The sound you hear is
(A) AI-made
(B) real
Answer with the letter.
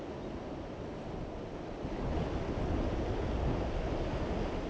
B